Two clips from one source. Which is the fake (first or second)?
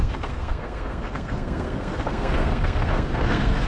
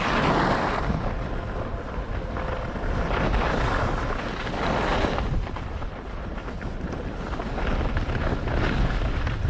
first